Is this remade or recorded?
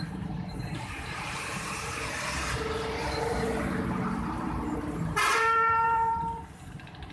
remade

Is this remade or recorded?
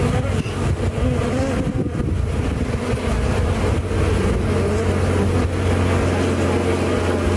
recorded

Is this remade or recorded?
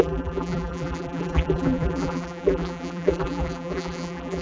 remade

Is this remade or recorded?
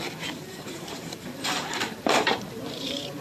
remade